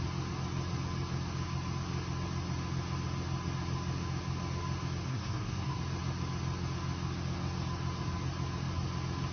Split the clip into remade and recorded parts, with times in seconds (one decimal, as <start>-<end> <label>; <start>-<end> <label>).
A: 0.0-5.1 recorded; 5.1-5.8 remade; 5.8-9.3 recorded